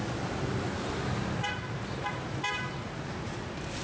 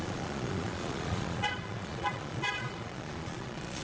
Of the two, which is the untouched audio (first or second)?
first